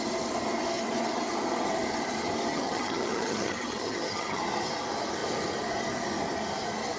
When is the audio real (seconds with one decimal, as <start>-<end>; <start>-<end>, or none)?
0.0-2.5; 4.4-7.0